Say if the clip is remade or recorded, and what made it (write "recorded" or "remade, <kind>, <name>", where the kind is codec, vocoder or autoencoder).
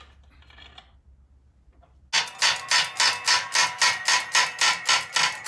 recorded